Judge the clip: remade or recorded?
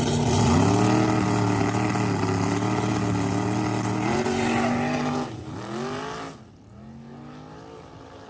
recorded